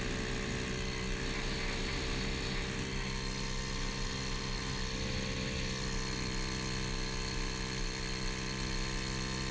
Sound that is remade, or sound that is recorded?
recorded